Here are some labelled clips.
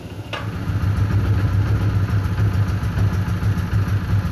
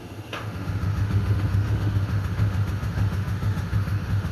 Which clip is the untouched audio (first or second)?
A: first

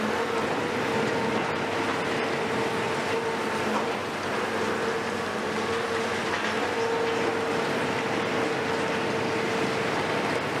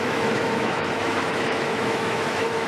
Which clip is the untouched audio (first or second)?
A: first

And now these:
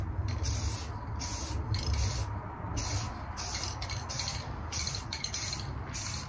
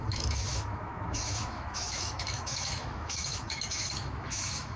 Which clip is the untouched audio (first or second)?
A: first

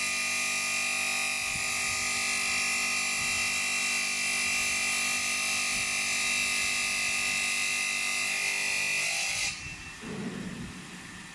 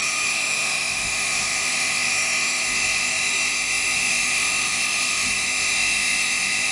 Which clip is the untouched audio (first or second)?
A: first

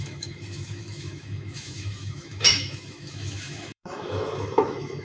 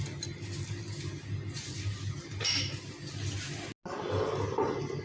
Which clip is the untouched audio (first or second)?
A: second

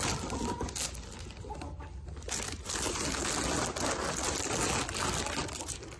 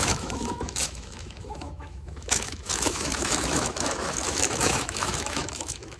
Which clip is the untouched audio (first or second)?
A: first